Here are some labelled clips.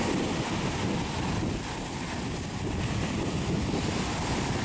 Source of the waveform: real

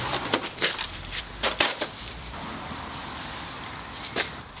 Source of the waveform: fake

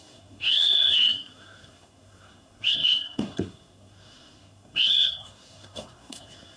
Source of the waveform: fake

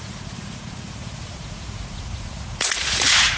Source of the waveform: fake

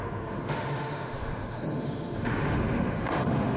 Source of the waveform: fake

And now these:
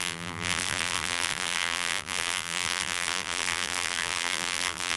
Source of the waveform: fake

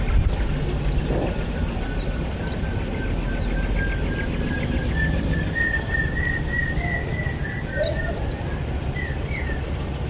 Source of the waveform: real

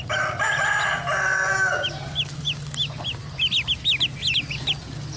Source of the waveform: real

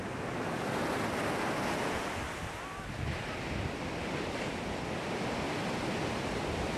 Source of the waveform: real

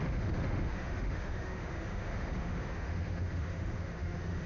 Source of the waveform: fake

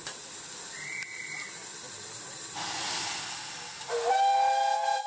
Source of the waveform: real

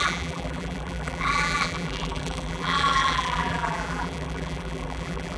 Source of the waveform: fake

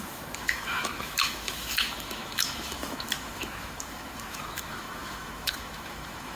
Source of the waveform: fake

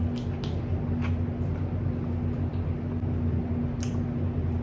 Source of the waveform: real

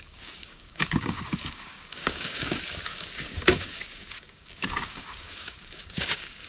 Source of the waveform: fake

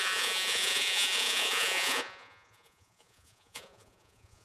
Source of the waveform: fake